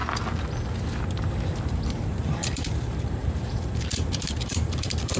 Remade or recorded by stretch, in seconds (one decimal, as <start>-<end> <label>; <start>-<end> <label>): 0.0-1.7 recorded; 1.7-5.2 remade